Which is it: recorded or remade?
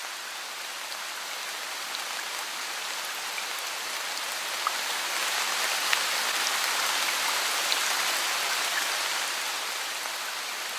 recorded